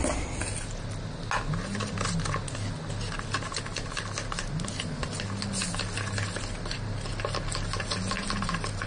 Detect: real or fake real